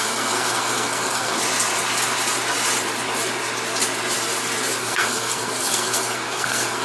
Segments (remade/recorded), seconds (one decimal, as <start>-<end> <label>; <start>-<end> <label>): 0.0-1.4 remade; 1.4-4.8 recorded; 4.8-6.8 remade